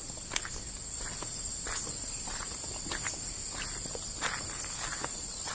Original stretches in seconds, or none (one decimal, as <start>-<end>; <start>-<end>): 0.0-5.5